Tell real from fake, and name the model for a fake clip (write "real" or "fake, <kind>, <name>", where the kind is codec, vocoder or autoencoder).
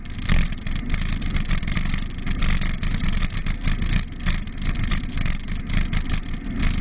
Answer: real